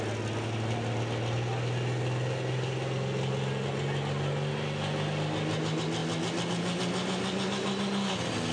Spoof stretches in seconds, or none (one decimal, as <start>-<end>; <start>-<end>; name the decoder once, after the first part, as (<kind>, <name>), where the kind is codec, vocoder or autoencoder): none